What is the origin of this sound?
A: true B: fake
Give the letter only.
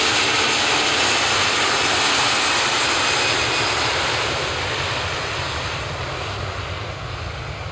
A